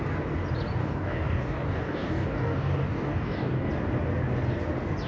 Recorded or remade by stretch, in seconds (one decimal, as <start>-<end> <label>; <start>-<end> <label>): 0.0-0.8 recorded; 0.8-3.7 remade; 3.7-5.1 recorded